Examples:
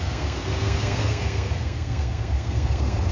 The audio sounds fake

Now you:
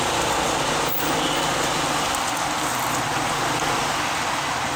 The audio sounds real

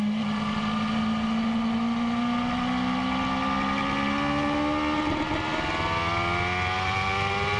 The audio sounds real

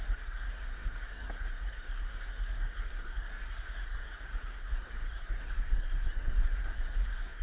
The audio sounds fake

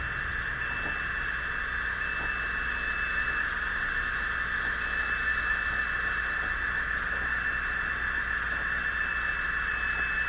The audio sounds real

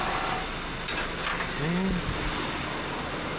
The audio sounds real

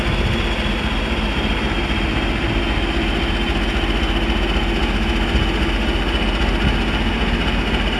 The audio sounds real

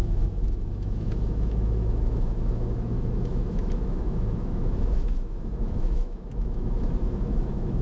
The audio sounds fake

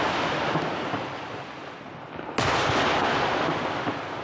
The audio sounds real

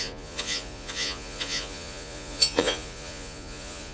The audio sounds fake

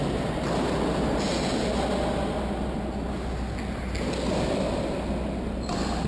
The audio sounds real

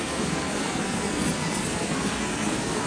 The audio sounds fake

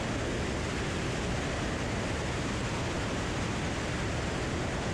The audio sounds real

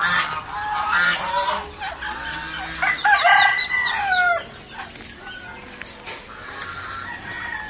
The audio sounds real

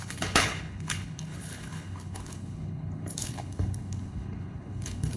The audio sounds fake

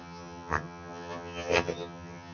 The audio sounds fake